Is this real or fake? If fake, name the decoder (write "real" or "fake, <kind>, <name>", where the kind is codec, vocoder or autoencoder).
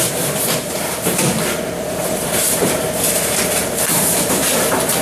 fake, vocoder, BigVGAN v2